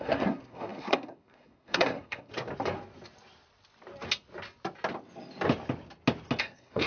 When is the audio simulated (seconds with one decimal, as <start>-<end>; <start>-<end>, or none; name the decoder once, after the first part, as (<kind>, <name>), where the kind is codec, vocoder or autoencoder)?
0.0-2.3 (codec, SNAC); 6.4-6.9